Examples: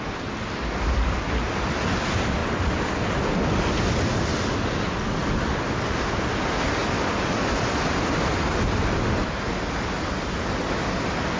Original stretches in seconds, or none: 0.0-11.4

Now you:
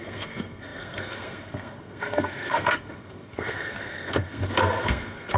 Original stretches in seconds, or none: none

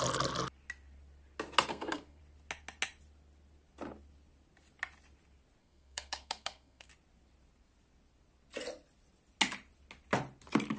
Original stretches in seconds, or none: 0.0-1.7; 2.2-5.6; 6.9-10.8

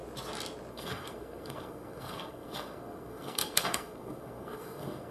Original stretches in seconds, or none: 0.0-0.7

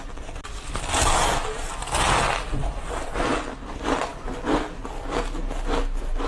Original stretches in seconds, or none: 0.0-6.3

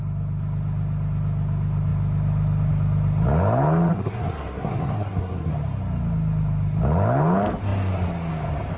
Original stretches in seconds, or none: 0.0-3.9; 5.5-8.8